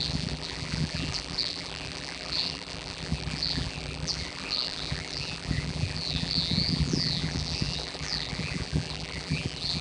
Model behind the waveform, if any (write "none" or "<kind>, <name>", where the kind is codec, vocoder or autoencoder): vocoder, BigVGAN v2